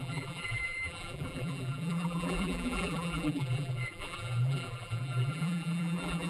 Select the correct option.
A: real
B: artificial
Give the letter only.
B